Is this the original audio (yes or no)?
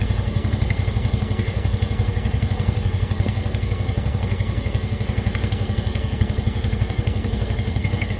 no